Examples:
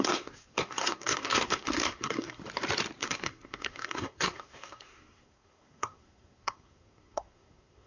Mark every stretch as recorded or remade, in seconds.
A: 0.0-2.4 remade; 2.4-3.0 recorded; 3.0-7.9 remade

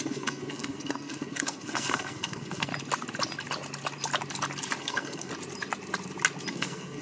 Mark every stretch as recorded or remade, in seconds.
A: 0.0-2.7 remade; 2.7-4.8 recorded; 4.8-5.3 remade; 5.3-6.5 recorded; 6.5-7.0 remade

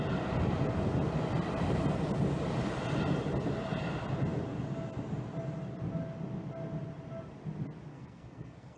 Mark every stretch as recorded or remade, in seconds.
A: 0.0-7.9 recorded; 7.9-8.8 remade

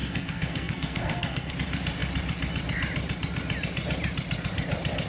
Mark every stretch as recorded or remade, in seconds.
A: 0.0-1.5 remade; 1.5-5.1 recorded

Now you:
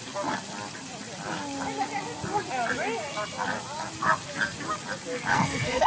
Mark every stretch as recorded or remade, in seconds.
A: 0.0-5.3 recorded; 5.3-5.9 remade

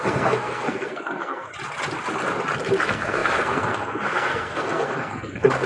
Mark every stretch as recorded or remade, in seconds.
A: 0.0-1.5 remade; 1.5-2.8 recorded; 2.8-5.7 remade

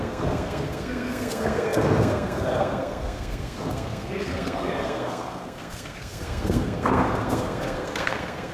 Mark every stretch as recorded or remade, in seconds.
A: 0.0-8.5 remade

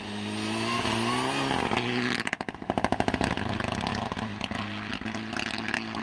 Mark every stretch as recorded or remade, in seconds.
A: 0.0-6.0 recorded